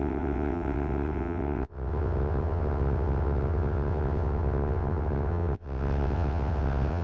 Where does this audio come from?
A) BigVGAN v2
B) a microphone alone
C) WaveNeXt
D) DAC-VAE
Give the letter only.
C